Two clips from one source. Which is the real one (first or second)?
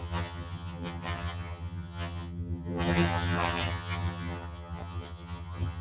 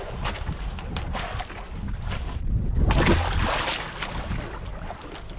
second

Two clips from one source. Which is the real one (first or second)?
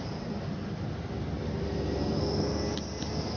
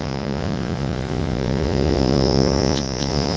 first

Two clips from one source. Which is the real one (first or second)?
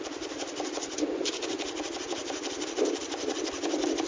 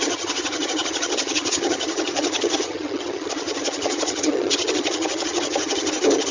first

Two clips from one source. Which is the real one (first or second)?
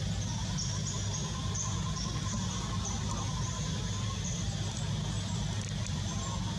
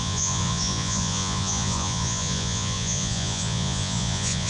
first